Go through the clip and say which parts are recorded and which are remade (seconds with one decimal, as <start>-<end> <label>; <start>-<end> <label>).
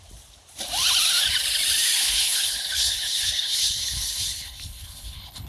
0.0-2.0 recorded; 2.0-5.5 remade